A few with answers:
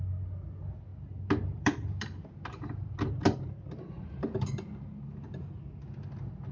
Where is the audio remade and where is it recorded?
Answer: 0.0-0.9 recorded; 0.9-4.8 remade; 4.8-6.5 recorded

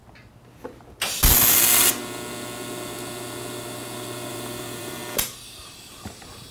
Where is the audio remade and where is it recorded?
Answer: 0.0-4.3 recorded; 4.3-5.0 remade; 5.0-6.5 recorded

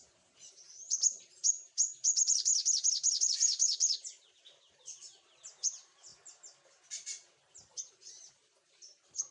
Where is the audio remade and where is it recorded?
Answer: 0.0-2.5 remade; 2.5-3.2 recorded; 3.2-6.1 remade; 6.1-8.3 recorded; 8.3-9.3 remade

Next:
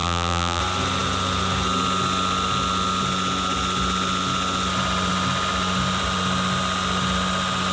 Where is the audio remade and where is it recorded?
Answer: 0.0-0.6 remade; 0.6-7.7 recorded

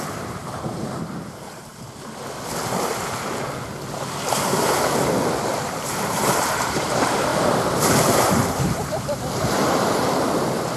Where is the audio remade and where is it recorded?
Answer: 0.0-1.7 remade; 1.7-5.5 recorded; 5.5-7.3 remade; 7.3-8.2 recorded; 8.2-10.8 remade

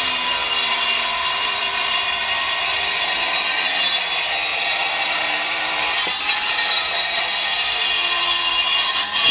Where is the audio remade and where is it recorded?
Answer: 0.0-0.7 recorded; 0.7-2.6 remade; 2.6-4.5 recorded; 4.5-7.8 remade; 7.8-9.3 recorded

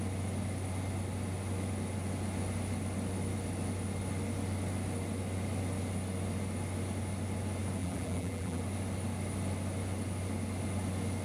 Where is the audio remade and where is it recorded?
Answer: 0.0-7.8 recorded; 7.8-8.6 remade; 8.6-11.2 recorded